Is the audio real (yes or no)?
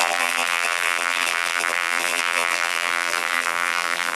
no